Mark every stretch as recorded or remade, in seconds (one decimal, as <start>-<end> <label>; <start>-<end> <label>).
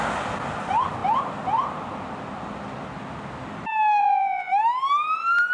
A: 0.0-4.0 recorded; 4.0-4.5 remade; 4.5-5.5 recorded